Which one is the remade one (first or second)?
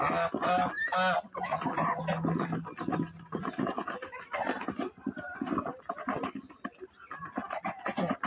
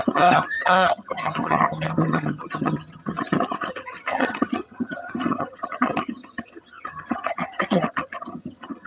second